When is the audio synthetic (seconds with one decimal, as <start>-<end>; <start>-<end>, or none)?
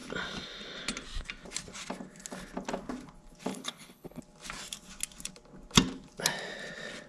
3.5-4.2